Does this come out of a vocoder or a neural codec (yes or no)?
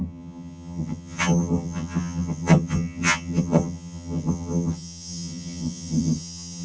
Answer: yes